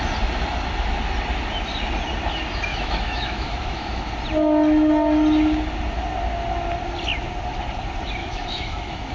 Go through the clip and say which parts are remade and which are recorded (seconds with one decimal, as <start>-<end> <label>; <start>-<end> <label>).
0.0-2.7 recorded; 2.7-4.1 remade; 4.1-8.2 recorded; 8.2-9.1 remade